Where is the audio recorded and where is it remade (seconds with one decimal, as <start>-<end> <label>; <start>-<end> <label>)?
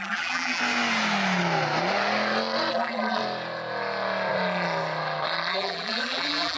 0.0-0.6 remade; 0.6-2.7 recorded; 2.7-3.2 remade; 3.2-5.5 recorded; 5.5-6.6 remade